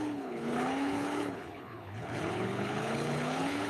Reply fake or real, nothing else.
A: fake